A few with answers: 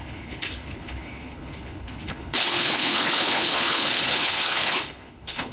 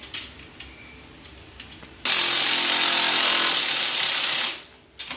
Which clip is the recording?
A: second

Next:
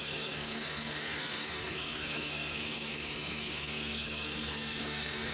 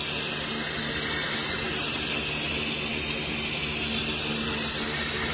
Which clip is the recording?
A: second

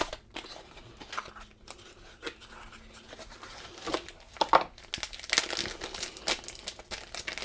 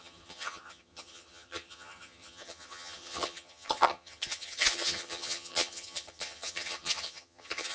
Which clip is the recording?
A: first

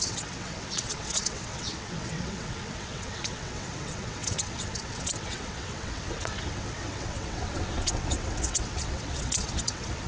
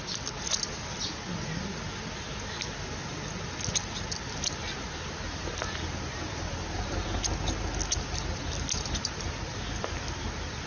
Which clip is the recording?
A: second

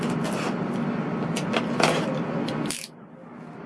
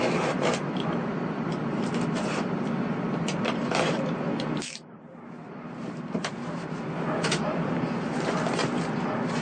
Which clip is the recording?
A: first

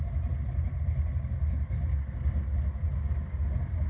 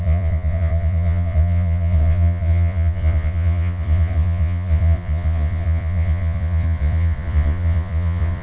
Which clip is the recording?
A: first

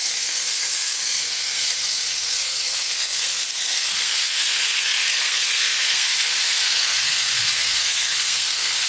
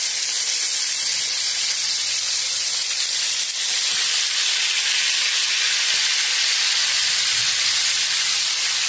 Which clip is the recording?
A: second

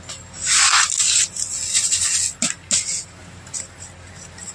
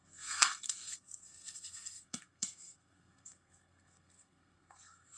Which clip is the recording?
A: first